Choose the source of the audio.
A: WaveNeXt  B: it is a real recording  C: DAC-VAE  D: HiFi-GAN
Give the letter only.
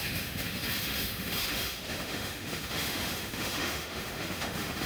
C